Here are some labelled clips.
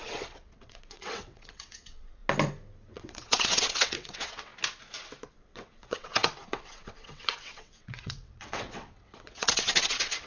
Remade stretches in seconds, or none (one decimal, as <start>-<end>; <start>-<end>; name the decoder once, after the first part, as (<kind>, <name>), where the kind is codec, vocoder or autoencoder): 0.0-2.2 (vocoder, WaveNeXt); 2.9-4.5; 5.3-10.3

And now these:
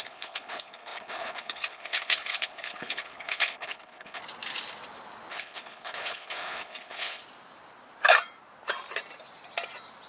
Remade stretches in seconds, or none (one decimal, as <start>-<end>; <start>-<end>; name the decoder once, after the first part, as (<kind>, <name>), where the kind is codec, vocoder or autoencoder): 0.0-4.2 (codec, HILCodec); 5.3-7.2

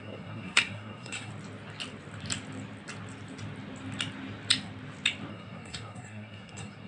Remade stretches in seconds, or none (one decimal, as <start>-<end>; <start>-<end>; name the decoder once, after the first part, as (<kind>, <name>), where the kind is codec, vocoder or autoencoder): 0.0-1.3 (codec, SNAC); 5.3-6.9